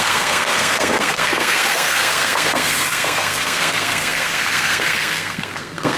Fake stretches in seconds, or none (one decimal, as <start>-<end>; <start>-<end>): 0.0-6.0